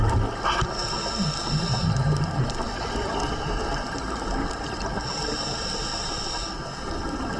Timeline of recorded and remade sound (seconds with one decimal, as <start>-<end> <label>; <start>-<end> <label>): 0.0-7.4 recorded